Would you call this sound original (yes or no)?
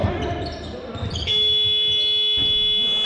yes